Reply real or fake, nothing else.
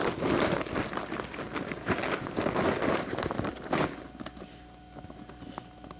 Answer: real